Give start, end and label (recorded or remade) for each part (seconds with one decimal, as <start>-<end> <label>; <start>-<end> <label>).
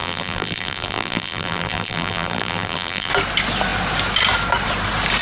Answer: 0.0-3.1 remade; 3.1-5.2 recorded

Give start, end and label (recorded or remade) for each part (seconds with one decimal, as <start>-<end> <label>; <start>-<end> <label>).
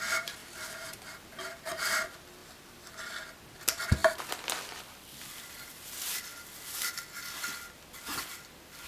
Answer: 0.0-0.4 recorded; 0.4-1.4 remade; 1.4-2.4 recorded; 2.4-3.2 remade; 3.2-4.0 recorded; 4.0-5.4 remade; 5.4-6.3 recorded; 6.3-6.9 remade; 6.9-8.9 recorded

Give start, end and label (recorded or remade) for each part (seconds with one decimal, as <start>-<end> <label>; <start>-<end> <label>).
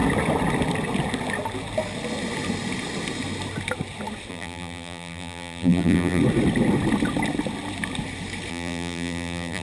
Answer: 0.0-4.3 recorded; 4.3-6.2 remade; 6.2-8.5 recorded; 8.5-9.6 remade